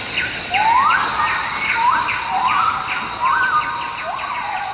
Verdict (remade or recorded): recorded